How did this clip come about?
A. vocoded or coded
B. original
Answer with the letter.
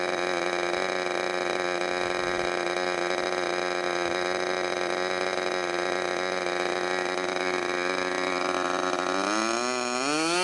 B